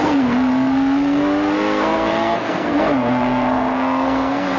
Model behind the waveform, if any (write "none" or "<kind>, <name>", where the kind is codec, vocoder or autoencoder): codec, SNAC